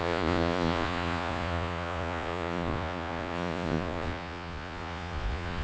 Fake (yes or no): yes